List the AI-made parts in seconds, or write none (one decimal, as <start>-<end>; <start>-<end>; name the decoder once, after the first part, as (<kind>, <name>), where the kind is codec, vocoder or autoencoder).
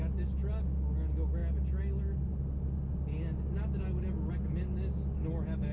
none